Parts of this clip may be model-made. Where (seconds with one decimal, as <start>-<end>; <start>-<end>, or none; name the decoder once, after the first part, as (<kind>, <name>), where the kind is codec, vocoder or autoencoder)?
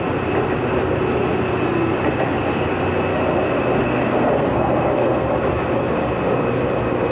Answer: 3.8-5.3 (codec, SNAC)